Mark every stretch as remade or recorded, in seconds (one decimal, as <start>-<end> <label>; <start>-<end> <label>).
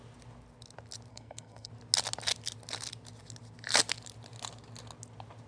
0.0-1.1 recorded; 1.1-1.7 remade; 1.7-5.5 recorded